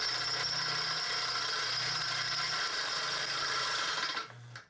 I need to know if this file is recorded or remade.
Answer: recorded